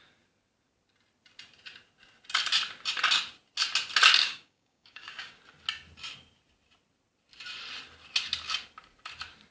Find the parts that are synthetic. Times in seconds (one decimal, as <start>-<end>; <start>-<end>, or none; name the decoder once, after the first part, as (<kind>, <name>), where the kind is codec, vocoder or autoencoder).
4.2-5.4 (codec, DAC)